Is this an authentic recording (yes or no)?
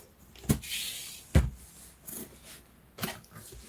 yes